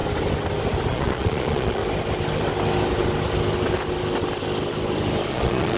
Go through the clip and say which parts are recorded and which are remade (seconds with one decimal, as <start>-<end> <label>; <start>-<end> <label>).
0.0-0.9 recorded; 0.9-1.8 remade; 1.8-5.3 recorded; 5.3-5.8 remade